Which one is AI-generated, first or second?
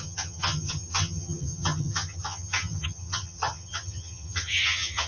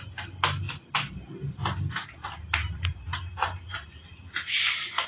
first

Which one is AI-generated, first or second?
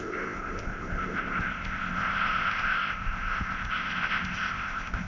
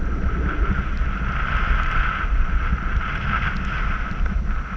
first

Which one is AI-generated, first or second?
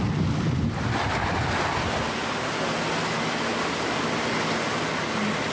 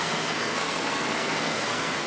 second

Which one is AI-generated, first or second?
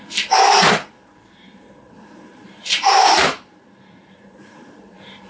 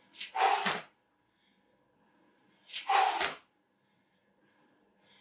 first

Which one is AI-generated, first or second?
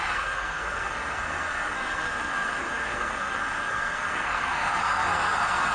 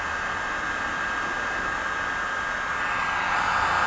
first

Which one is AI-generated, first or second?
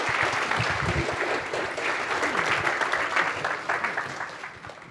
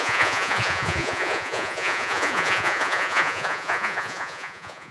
second